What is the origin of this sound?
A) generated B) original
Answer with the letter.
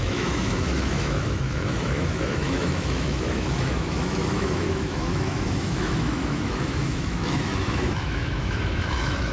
A